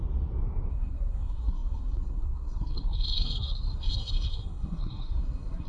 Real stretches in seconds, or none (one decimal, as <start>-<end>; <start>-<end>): 0.0-0.7